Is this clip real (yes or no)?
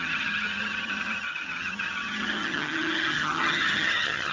no